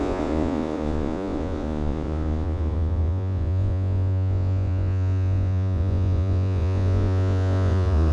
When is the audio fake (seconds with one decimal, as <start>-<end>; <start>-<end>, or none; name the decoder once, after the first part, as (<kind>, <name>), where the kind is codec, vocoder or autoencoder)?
0.0-8.1 (vocoder, Vocos)